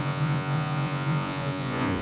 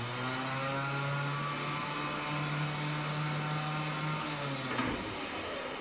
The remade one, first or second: first